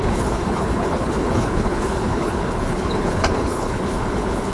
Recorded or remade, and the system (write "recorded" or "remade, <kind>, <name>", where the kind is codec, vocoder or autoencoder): remade, codec, HILCodec